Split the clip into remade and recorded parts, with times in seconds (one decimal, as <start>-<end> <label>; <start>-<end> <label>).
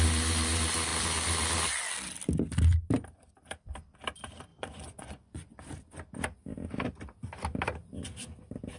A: 0.0-4.5 recorded; 4.5-5.6 remade; 5.6-8.8 recorded